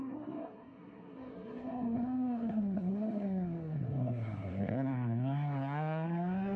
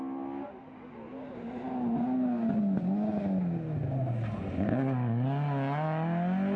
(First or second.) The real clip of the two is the second